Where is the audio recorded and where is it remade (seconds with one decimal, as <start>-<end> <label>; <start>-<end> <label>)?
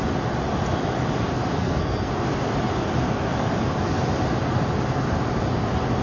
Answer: 0.0-1.6 recorded; 1.6-2.1 remade; 2.1-6.0 recorded